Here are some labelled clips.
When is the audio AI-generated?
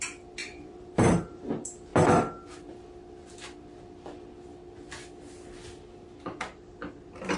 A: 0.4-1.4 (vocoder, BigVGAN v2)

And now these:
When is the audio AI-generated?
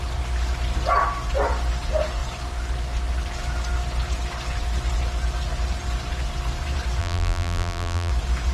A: 7.0-8.1 (vocoder, BigVGAN v2)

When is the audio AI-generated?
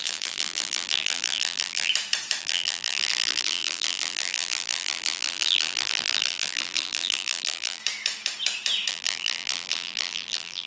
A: 0.0-1.9 (vocoder, BigVGAN v2); 2.4-7.8; 8.9-10.7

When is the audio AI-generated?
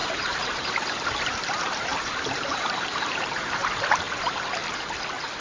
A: 0.0-3.2 (vocoder, BigVGAN v2)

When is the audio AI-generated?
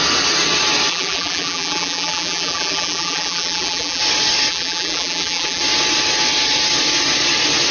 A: 0.9-4.0 (vocoder, BigVGAN v2); 4.5-5.6